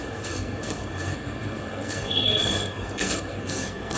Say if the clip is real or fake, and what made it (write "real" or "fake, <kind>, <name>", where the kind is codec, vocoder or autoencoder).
fake, codec, SNAC